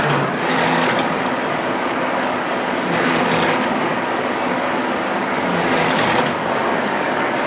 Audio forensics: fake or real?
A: fake